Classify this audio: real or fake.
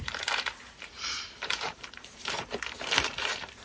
fake